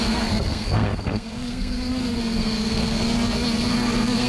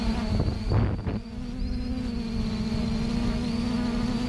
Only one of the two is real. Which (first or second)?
second